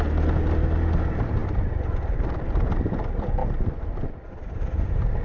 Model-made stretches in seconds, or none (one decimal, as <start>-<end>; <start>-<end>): 3.4-5.2